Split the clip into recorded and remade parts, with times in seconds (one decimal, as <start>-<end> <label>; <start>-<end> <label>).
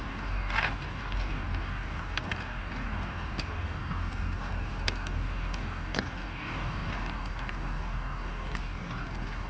0.0-9.5 remade